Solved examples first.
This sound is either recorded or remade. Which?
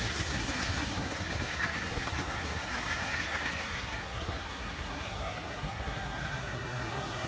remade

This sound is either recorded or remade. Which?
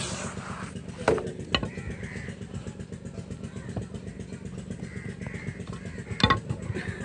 recorded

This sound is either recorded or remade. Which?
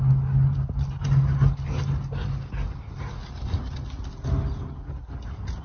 recorded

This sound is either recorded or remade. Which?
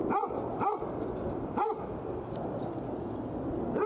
recorded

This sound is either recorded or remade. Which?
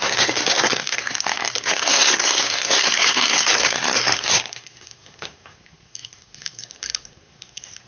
remade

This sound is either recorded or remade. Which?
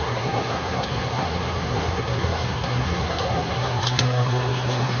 remade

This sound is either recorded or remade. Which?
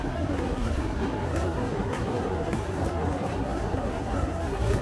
remade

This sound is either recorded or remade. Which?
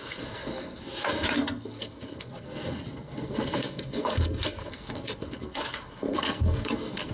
remade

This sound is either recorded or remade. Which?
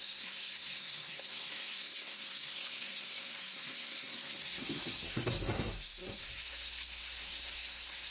remade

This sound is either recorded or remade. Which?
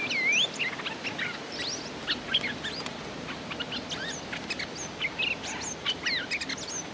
recorded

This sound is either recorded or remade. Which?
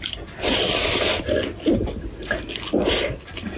recorded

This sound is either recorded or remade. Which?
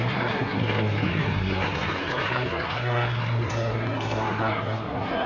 remade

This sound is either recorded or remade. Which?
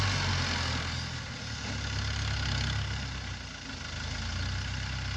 recorded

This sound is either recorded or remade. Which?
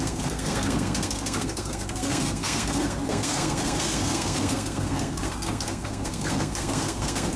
remade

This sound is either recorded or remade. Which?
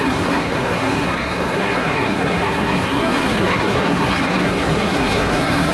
remade